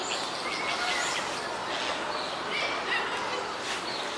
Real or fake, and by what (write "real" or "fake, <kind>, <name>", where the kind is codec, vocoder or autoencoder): real